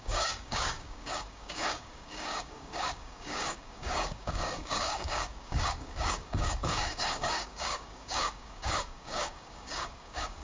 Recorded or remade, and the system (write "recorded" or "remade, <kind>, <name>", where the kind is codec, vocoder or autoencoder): remade, codec, DAC